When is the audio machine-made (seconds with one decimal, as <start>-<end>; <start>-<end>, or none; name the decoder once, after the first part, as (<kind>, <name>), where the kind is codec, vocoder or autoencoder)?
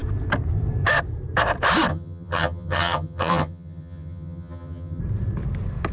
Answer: 1.9-5.0 (vocoder, HiFi-GAN)